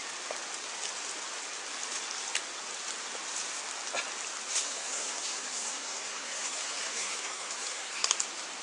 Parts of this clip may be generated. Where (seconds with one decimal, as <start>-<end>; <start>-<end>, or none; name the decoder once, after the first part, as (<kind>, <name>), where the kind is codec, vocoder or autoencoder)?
4.5-8.2 (codec, SNAC)